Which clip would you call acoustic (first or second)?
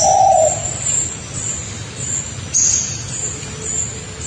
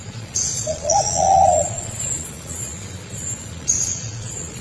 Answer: first